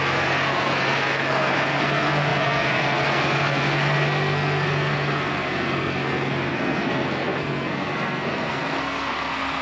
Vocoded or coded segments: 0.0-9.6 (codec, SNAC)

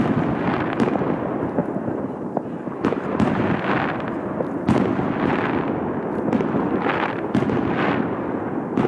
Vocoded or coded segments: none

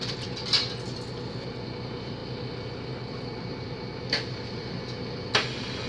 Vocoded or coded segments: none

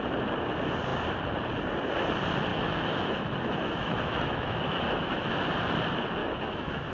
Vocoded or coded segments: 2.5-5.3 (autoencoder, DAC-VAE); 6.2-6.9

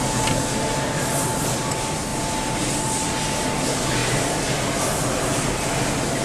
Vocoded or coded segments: none

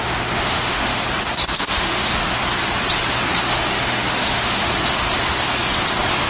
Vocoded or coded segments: 0.0-1.0 (autoencoder, DAC-VAE); 1.6-2.4; 3.4-4.7

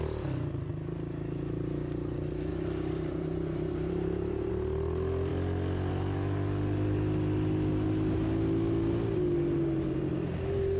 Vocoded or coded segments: 2.5-4.5 (vocoder, BigVGAN v2)